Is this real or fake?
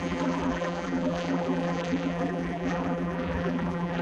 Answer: fake